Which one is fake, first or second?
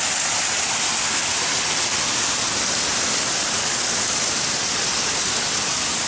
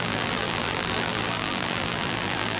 second